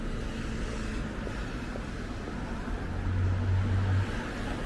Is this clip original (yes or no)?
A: yes